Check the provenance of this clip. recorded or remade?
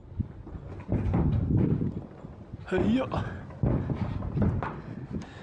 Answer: recorded